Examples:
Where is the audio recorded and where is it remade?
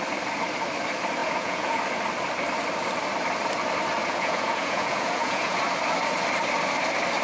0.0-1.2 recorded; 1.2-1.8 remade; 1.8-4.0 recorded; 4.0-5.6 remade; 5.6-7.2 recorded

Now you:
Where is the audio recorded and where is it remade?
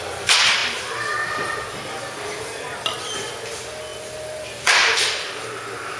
0.0-6.0 recorded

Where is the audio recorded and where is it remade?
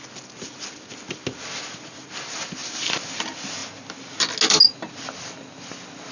0.0-6.1 recorded